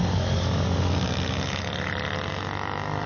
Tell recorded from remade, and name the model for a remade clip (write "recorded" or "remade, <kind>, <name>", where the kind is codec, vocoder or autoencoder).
recorded